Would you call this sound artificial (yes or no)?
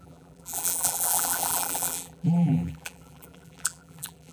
yes